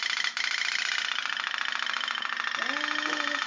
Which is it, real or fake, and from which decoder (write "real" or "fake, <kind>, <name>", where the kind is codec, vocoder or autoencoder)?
real